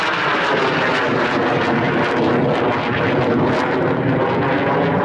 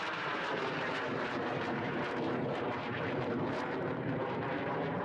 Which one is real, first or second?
first